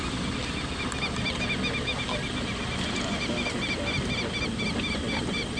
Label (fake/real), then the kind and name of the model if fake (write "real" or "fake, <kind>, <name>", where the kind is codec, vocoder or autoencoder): real